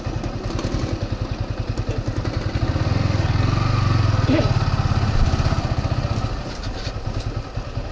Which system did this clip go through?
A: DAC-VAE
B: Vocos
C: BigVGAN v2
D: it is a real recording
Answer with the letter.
D